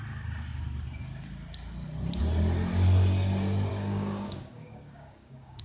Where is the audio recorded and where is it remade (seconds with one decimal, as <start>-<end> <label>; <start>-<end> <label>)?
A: 0.0-3.7 recorded; 3.7-5.6 remade